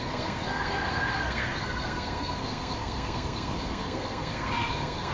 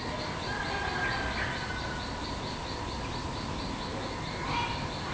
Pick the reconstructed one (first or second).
first